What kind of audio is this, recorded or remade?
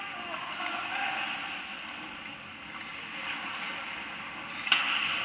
recorded